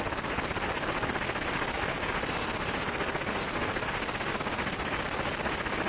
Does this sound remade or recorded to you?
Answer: recorded